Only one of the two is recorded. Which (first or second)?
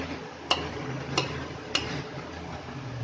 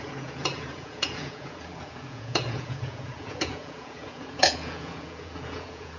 first